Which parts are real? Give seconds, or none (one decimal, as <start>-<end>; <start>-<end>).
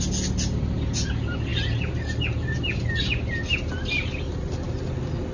0.0-5.3